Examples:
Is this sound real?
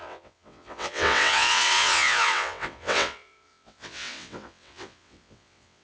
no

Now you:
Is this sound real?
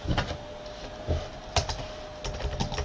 yes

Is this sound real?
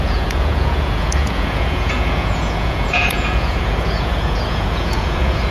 no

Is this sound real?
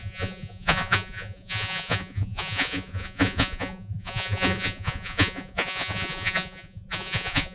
no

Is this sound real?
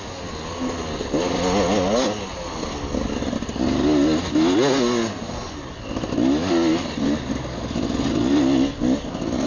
yes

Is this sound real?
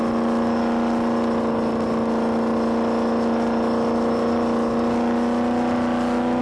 yes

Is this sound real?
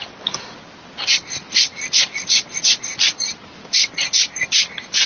yes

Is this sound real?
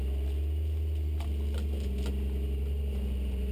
yes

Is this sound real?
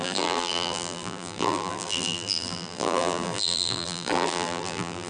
no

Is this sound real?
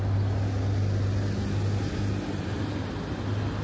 yes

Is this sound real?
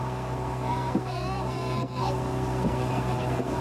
no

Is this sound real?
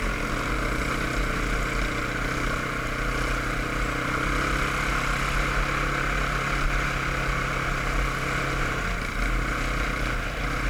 yes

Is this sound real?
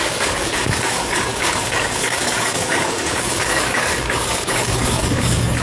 no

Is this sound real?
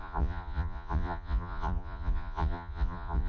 no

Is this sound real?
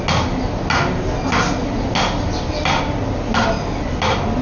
yes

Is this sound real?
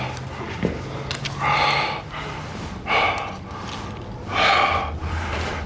yes